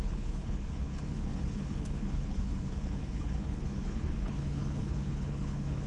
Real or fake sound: fake